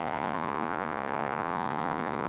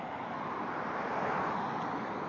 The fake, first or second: first